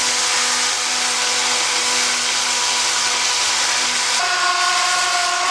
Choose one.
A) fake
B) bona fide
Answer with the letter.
B